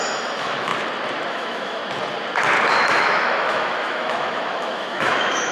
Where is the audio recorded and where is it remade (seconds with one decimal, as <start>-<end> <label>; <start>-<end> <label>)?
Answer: 0.0-0.7 remade; 0.7-1.3 recorded; 1.3-1.8 remade; 1.8-2.7 recorded; 2.7-5.5 remade